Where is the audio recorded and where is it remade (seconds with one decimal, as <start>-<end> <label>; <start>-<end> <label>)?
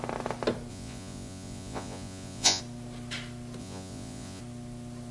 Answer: 0.0-0.7 recorded; 0.7-2.6 remade; 2.6-3.6 recorded; 3.6-4.4 remade; 4.4-5.1 recorded